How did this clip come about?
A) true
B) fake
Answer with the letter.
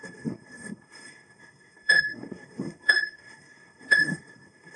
B